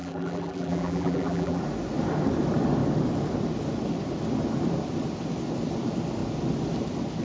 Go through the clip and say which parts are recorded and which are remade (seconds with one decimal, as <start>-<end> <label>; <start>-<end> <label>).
0.0-1.6 remade; 1.6-7.2 recorded